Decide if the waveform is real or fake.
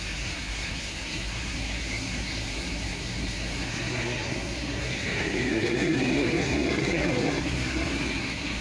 fake